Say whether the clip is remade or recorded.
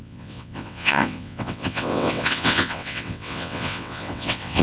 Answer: remade